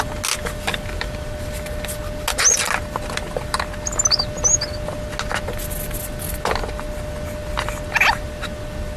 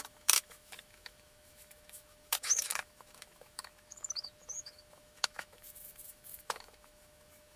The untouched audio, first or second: first